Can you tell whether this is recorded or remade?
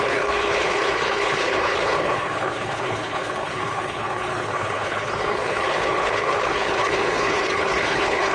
remade